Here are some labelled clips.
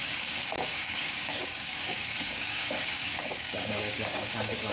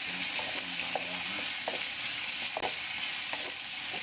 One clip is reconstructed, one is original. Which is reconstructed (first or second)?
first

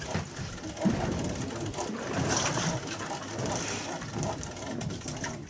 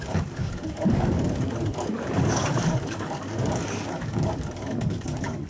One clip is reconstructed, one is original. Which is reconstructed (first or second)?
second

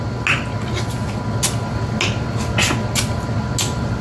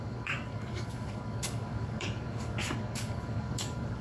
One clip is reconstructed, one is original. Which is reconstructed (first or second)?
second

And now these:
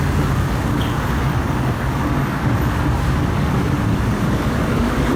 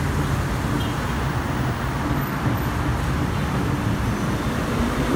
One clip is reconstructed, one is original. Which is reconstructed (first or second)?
first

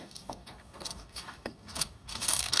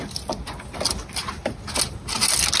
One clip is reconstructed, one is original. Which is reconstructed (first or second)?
first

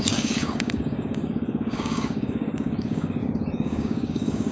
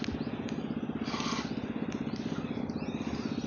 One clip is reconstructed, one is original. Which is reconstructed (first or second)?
first